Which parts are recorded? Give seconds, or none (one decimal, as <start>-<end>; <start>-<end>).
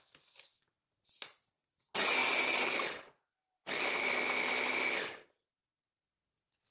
0.0-6.7